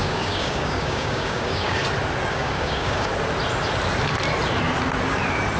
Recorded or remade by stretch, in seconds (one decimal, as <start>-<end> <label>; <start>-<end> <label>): 0.0-1.8 remade; 1.8-2.3 recorded; 2.3-3.1 remade; 3.1-5.6 recorded